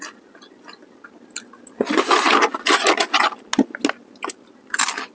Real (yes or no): yes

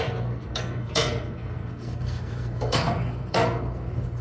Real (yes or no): no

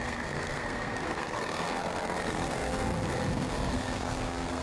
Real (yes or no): no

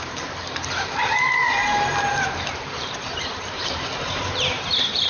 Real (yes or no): no